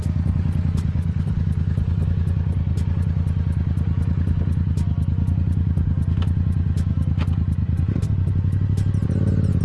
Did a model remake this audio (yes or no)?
no